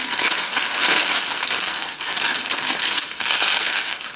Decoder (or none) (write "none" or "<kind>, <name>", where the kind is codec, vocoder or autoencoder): codec, SNAC